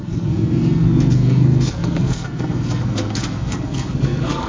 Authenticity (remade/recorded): remade